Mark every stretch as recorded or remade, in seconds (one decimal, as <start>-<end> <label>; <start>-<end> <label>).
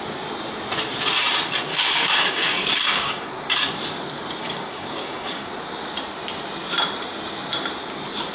0.0-1.7 recorded; 1.7-3.3 remade; 3.3-4.4 recorded; 4.4-5.5 remade; 5.5-8.3 recorded